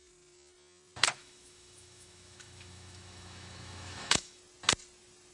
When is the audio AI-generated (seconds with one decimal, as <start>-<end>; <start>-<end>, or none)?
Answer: 1.2-4.4